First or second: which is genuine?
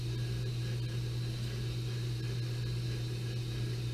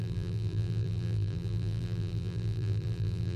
first